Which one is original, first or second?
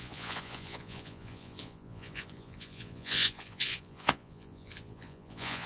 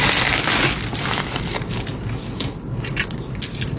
second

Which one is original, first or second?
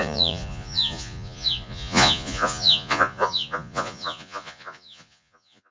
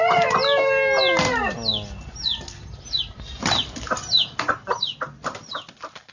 second